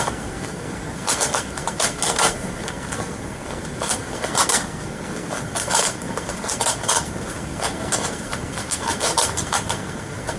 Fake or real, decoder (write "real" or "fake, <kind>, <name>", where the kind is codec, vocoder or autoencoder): fake, codec, SNAC